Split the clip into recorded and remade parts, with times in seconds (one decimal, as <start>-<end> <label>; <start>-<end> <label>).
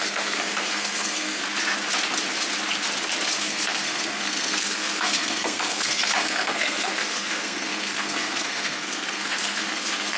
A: 0.0-1.4 remade; 1.4-3.4 recorded; 3.4-10.2 remade